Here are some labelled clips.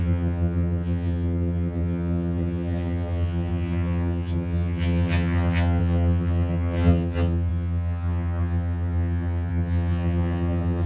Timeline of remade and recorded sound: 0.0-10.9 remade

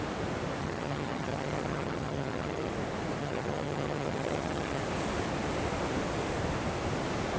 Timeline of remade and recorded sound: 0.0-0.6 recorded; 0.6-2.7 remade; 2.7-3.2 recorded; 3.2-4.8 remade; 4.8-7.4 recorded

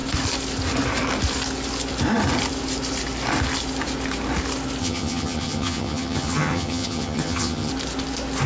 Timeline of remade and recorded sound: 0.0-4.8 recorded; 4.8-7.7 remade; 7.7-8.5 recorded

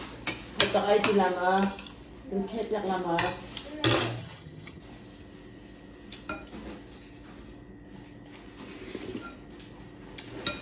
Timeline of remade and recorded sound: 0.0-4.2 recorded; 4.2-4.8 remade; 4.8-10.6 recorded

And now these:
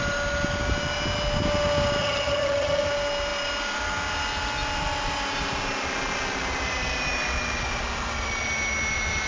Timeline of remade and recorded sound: 0.0-2.0 recorded; 2.0-2.9 remade; 2.9-9.3 recorded

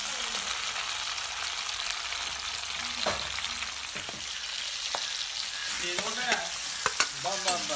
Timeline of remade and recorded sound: 0.0-7.8 recorded

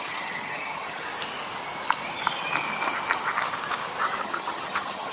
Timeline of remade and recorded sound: 0.0-1.1 remade; 1.1-4.2 recorded; 4.2-5.1 remade

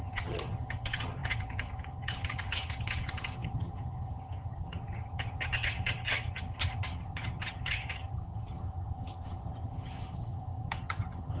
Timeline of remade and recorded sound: 0.0-11.4 remade